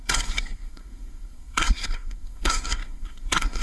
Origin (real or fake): fake